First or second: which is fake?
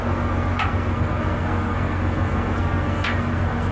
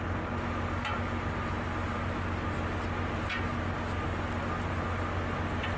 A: first